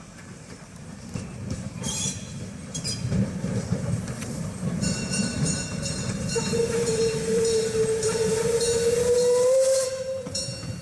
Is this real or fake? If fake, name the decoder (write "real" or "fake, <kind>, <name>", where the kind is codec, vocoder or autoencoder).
fake, vocoder, BigVGAN v2